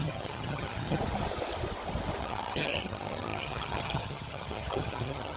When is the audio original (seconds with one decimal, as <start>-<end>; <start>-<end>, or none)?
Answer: 1.0-2.2